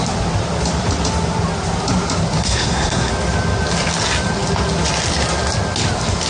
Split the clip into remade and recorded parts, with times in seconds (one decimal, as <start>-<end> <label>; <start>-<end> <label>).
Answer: 0.0-2.4 recorded; 2.4-3.1 remade; 3.1-6.3 recorded